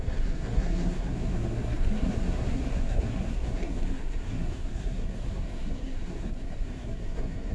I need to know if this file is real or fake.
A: fake